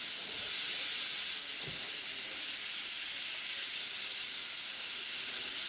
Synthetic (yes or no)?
no